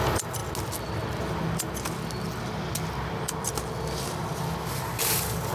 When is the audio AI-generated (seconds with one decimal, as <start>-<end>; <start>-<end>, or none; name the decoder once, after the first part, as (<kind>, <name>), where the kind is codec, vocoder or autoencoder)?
none